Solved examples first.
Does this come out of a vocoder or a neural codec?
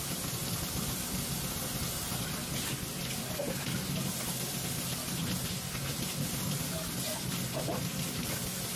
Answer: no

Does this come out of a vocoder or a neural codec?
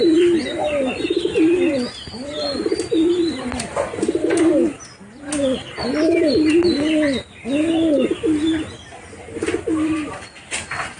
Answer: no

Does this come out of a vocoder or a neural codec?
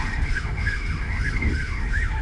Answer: yes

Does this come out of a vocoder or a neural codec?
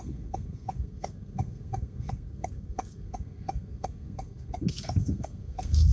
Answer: yes